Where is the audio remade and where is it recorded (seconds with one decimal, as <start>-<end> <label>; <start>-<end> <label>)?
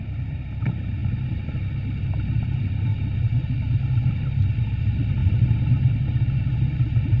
0.0-2.9 remade; 2.9-3.6 recorded; 3.6-5.2 remade; 5.2-6.7 recorded; 6.7-7.2 remade